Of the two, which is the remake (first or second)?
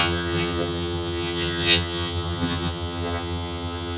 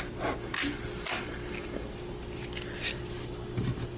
first